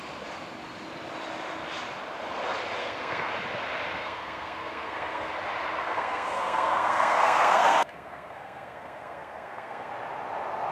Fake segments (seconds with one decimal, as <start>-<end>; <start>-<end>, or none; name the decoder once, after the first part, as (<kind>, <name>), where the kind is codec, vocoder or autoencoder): 2.8-3.3 (codec, SNAC); 4.0-5.3; 5.8-9.9